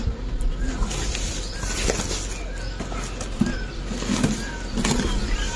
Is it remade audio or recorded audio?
recorded